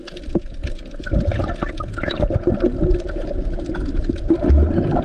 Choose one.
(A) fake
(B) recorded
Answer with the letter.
B